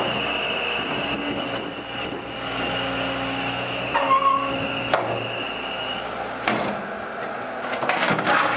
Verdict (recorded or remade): recorded